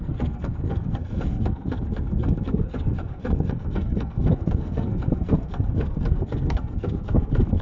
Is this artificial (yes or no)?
yes